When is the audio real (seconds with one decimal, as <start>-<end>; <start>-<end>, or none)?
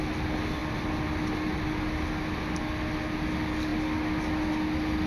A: 0.0-5.1